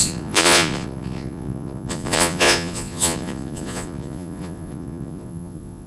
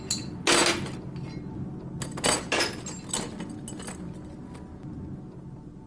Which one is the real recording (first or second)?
second